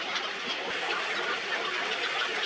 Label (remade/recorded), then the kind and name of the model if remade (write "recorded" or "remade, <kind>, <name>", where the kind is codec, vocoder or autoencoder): recorded